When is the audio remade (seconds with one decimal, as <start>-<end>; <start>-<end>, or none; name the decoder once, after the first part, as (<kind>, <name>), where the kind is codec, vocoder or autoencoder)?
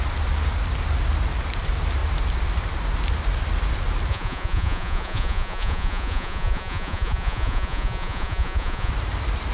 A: 4.1-8.9 (vocoder, Vocos)